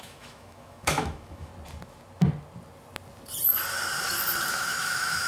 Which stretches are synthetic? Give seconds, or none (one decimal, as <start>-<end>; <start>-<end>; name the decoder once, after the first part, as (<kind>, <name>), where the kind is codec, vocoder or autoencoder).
0.0-1.5 (autoencoder, DAC-VAE); 4.5-5.3